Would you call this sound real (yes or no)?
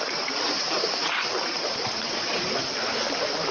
no